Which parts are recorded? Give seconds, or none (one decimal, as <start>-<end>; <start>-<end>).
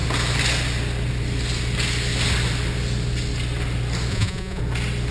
0.0-4.1; 4.6-5.1